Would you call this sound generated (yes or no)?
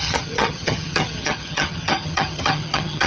yes